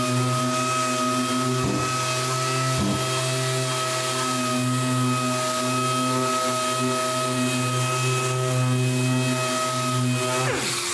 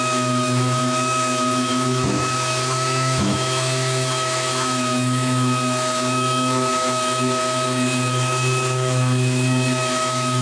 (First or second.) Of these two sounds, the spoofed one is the second